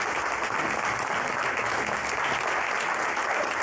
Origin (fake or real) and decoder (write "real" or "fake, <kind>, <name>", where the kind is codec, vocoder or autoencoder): real